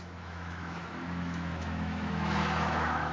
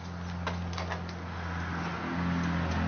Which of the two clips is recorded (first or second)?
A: second